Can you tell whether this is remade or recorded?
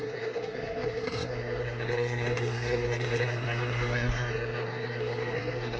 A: remade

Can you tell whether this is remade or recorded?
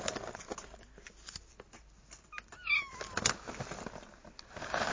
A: recorded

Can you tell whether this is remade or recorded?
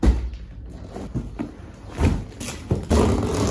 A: recorded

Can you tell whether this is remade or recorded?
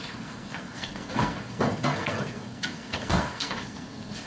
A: remade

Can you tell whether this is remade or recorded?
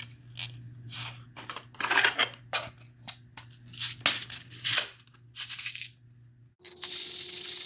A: recorded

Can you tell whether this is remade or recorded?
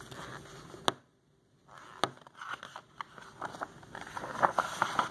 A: recorded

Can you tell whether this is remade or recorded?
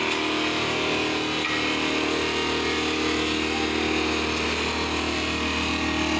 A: recorded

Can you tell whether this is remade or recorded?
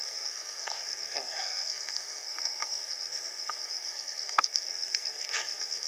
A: remade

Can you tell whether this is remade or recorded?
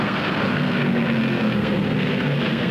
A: remade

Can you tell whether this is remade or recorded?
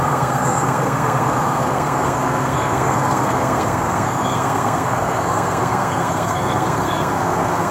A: remade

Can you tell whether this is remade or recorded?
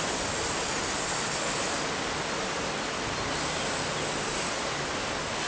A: recorded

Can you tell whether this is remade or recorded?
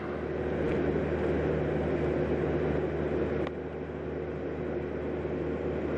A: recorded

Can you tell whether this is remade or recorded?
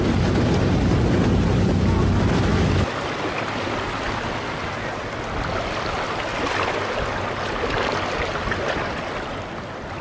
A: recorded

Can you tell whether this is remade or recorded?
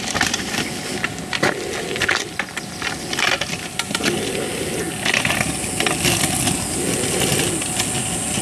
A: recorded